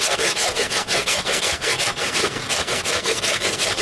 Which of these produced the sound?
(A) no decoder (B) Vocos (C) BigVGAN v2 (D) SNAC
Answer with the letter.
D